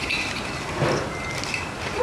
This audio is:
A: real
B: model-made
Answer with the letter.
A